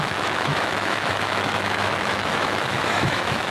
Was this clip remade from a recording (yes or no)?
yes